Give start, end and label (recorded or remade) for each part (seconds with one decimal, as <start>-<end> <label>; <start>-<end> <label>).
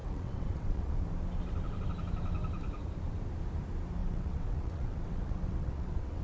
0.0-0.9 remade; 0.9-4.0 recorded; 4.0-6.2 remade